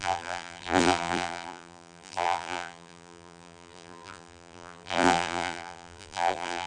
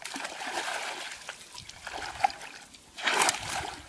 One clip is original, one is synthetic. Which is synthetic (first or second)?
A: first